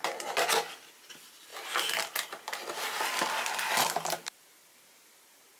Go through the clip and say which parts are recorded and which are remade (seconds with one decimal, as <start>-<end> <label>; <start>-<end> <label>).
0.0-5.6 recorded